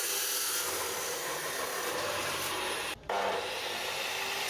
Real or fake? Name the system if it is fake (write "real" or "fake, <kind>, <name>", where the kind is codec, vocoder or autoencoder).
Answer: real